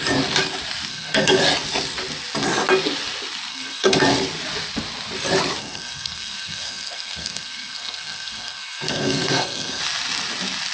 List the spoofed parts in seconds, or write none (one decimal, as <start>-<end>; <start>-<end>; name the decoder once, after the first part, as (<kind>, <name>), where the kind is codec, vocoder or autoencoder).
0.9-1.4 (codec, SNAC); 3.5-4.0; 5.6-9.8

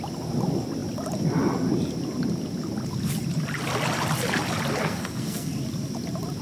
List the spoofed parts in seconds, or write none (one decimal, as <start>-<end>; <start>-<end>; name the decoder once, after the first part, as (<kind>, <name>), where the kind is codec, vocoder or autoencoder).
4.8-5.5 (codec, SNAC)

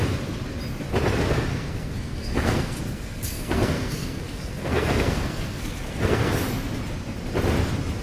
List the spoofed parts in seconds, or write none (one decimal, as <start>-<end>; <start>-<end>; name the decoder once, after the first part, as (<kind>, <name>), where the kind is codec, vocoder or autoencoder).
1.5-6.3 (codec, SNAC)

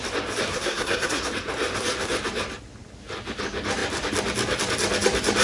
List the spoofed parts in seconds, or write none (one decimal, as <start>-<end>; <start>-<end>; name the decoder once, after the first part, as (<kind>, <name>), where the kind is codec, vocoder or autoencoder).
0.5-1.3 (codec, SNAC)

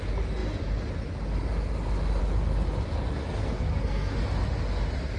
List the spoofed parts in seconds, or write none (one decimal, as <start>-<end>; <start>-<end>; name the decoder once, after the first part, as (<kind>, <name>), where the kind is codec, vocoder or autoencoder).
3.4-4.2 (codec, SNAC)

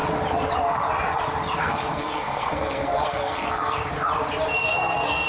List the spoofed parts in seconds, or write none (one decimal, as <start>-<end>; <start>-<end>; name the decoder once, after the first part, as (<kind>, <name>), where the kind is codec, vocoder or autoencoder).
1.6-3.8 (codec, SNAC); 4.6-5.3